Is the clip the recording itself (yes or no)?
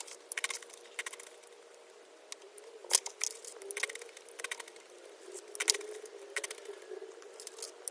yes